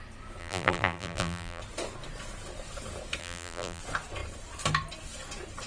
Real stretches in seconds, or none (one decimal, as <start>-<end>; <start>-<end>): 0.0-0.4; 1.6-3.2; 3.8-5.7